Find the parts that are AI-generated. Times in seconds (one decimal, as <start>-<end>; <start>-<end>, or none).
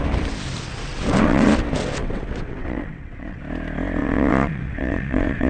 0.9-1.5; 2.0-3.4; 4.0-5.5